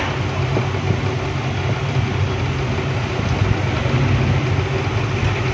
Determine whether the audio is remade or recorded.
recorded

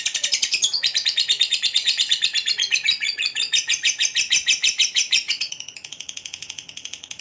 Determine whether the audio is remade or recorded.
remade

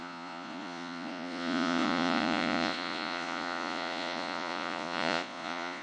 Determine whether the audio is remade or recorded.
remade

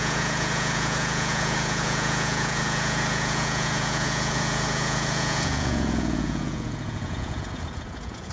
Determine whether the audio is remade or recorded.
remade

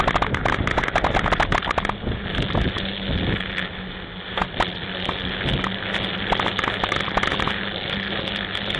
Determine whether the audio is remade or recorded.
recorded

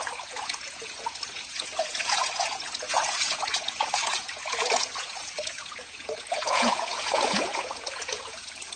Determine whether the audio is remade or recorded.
remade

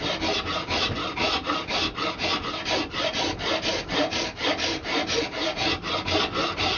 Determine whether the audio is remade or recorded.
recorded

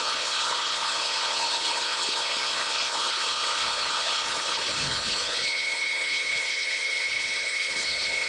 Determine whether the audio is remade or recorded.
remade